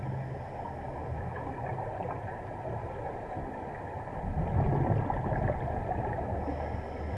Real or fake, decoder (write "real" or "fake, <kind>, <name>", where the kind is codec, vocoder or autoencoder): real